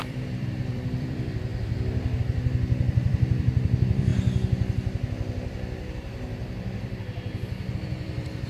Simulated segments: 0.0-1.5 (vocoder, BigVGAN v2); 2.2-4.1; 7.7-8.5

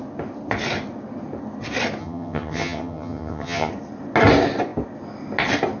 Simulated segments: 2.0-3.7 (vocoder, HiFi-GAN)

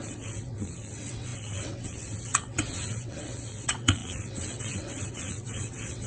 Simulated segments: 0.0-6.1 (vocoder, WaveNeXt)